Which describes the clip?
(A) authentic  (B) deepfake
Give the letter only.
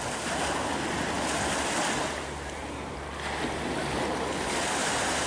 A